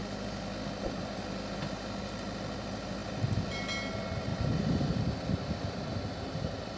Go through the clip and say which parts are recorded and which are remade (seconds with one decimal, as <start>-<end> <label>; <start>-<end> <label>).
0.0-6.8 recorded